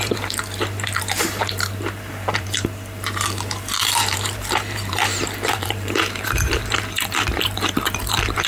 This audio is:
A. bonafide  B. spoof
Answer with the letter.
B